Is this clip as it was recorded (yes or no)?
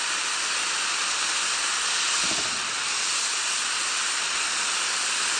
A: yes